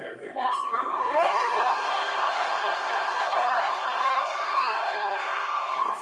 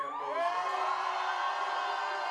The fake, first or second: first